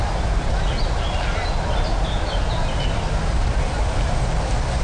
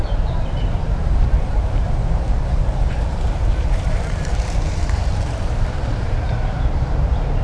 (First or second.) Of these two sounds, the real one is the first